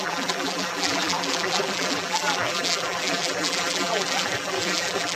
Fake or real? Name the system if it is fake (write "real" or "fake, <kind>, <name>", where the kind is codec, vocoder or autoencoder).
fake, vocoder, BigVGAN v2